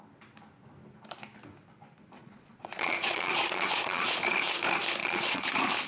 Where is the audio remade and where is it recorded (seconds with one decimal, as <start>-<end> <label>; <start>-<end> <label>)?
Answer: 0.0-2.2 recorded; 2.2-4.2 remade; 4.2-5.0 recorded; 5.0-5.5 remade; 5.5-5.9 recorded